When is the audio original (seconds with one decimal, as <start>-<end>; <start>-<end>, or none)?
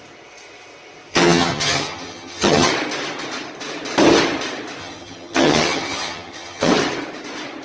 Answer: 0.0-1.1; 2.7-4.8; 6.7-7.6